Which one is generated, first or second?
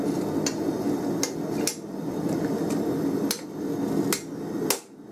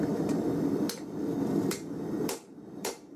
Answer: second